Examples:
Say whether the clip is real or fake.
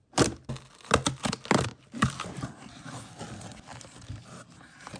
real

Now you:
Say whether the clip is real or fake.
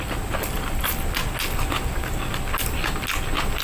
real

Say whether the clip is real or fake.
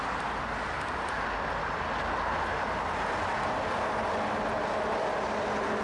real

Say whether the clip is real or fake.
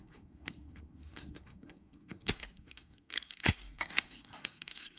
fake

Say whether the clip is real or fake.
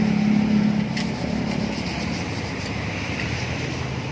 real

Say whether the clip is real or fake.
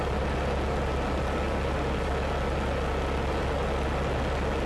real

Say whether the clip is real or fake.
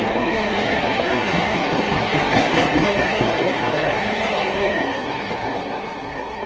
fake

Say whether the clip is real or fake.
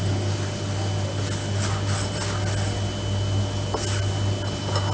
real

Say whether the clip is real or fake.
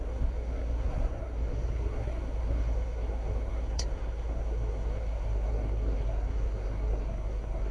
fake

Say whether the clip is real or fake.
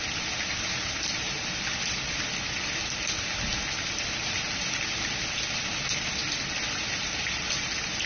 real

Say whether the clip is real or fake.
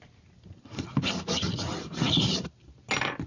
real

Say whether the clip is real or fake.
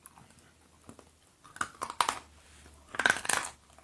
real